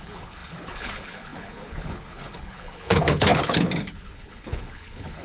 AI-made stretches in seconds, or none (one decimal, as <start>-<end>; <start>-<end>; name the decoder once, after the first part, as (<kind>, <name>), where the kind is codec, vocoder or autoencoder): 0.0-5.2 (codec, HILCodec)